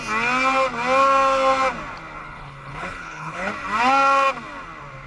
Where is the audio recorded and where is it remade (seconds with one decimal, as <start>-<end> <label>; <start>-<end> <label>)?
0.0-2.2 recorded; 2.2-3.5 remade; 3.5-5.1 recorded